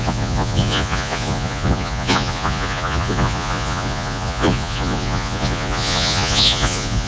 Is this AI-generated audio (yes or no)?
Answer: yes